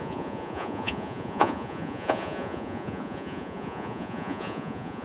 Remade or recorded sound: remade